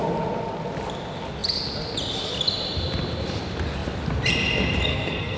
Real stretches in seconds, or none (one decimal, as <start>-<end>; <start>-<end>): 0.0-4.9